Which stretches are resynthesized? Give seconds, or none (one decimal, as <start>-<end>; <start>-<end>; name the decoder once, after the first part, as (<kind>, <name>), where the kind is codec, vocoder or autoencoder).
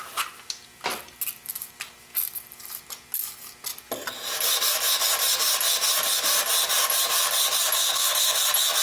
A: 7.8-8.4 (codec, SNAC)